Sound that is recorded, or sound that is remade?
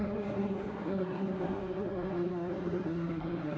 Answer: remade